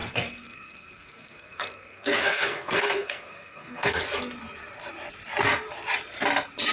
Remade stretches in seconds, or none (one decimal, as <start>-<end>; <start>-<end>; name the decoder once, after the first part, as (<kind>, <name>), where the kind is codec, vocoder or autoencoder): 0.0-4.0 (codec, SNAC)

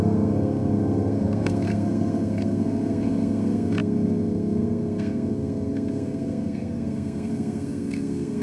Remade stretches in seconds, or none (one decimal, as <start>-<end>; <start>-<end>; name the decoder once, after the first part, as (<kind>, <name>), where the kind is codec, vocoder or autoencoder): 0.0-8.4 (codec, SNAC)

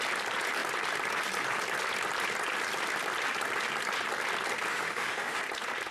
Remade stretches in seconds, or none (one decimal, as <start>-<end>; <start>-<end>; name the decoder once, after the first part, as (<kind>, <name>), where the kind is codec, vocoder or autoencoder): 4.7-5.4 (autoencoder, DAC-VAE)